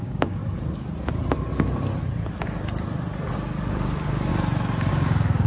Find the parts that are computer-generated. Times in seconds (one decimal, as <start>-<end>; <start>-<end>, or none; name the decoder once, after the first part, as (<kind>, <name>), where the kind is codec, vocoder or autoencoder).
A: 0.0-0.4 (codec, DAC); 3.7-4.3; 4.9-5.5